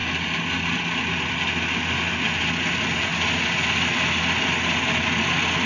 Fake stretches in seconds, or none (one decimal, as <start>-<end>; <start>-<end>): none